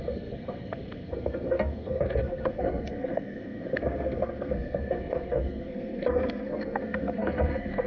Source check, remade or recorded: remade